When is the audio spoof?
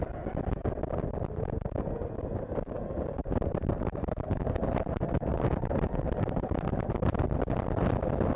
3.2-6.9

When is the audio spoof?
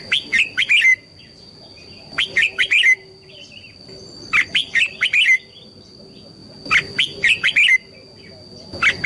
0.9-6.0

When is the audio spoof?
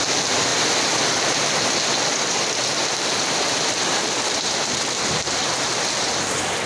0.5-4.5; 5.4-6.1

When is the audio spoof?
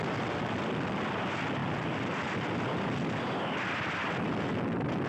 1.6-5.1